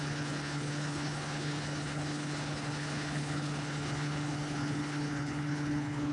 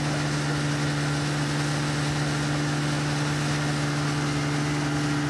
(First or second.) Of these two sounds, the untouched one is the second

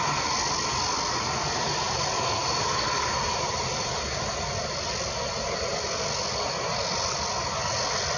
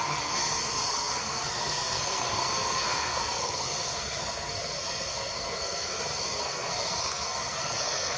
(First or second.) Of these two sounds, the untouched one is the first